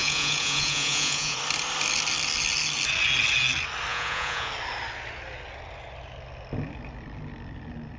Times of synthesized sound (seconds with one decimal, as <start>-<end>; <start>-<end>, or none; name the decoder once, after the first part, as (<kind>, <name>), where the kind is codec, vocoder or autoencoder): 0.0-1.4 (vocoder, Vocos); 3.9-4.5